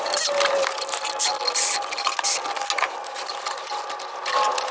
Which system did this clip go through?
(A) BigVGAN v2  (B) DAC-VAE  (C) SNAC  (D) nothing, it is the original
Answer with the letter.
D